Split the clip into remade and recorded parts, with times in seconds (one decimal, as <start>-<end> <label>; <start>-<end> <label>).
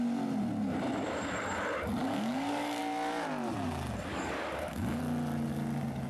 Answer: 0.0-2.0 recorded; 2.0-2.8 remade; 2.8-4.1 recorded; 4.1-5.0 remade; 5.0-6.1 recorded